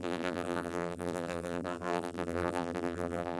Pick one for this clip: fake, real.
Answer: fake